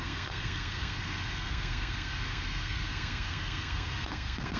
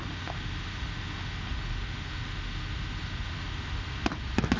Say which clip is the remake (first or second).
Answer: first